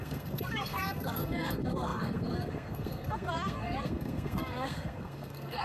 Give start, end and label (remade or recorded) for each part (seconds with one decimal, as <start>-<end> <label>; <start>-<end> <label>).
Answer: 0.0-5.6 remade